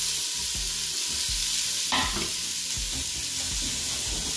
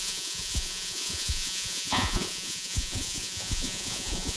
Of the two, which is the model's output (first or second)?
second